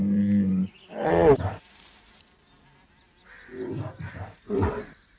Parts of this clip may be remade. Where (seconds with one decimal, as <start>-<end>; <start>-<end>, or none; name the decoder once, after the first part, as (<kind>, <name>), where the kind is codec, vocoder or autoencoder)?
none